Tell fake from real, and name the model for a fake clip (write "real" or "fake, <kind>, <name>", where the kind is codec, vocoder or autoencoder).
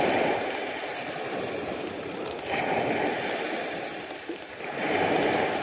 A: fake, vocoder, BigVGAN v2